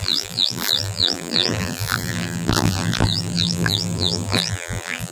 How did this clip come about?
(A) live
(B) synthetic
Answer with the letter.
B